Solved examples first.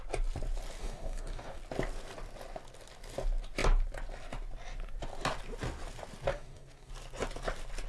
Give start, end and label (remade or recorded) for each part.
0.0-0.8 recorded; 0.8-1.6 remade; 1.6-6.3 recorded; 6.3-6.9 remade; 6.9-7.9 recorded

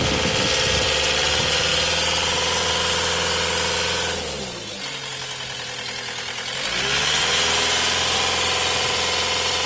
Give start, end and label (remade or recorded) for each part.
0.0-9.7 recorded

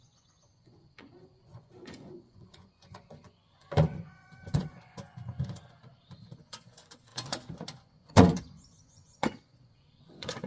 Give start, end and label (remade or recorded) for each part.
0.0-10.5 remade

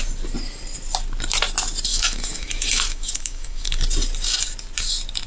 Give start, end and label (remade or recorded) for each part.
0.0-1.9 recorded; 1.9-3.8 remade; 3.8-5.3 recorded